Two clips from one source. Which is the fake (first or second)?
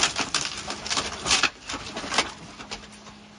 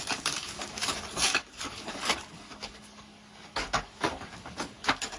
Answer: second